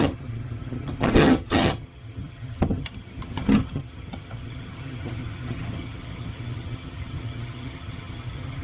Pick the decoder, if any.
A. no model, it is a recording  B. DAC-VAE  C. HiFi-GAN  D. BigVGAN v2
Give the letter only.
C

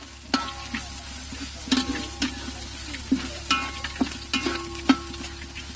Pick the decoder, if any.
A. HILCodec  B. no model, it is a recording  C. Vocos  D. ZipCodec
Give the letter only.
B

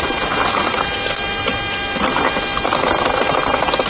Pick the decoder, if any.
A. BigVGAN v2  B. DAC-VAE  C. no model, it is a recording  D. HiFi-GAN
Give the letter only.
C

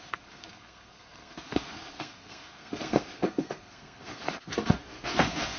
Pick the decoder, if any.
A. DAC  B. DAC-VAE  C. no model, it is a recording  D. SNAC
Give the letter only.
D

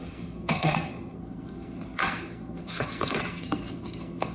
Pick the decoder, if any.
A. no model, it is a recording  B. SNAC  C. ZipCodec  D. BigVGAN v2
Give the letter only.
B